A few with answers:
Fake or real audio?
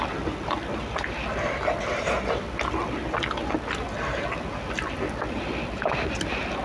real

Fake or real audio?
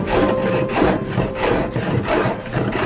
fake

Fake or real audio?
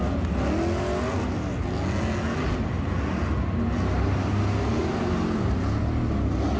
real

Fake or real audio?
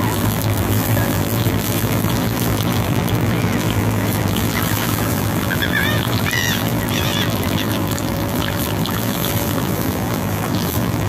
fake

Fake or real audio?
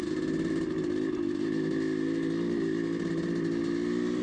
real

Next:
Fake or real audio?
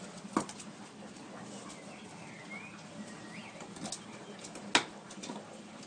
real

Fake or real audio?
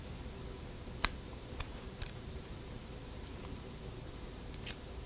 fake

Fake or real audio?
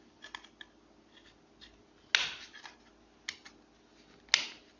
real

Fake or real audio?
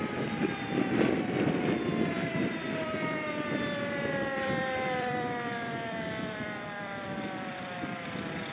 fake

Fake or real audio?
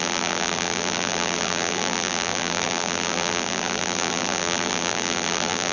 fake